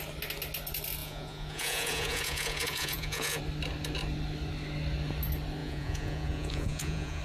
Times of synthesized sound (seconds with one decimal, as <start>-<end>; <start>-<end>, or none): 1.0-3.4; 5.6-7.2